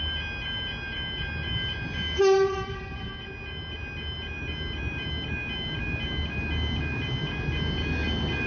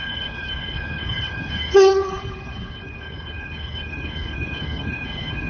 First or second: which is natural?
first